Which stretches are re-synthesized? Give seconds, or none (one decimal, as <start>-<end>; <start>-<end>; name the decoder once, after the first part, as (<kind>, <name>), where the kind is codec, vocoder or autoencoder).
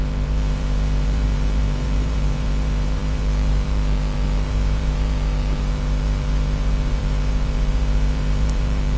0.0-9.0 (vocoder, BigVGAN v2)